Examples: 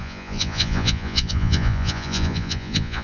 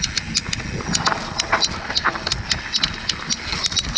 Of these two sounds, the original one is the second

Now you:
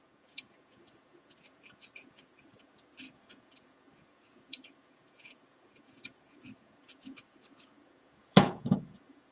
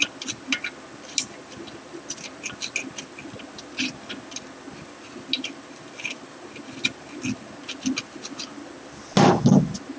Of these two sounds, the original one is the second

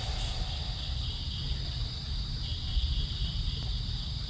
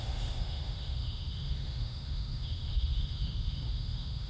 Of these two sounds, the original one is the first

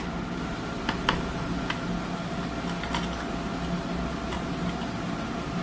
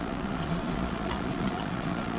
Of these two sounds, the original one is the first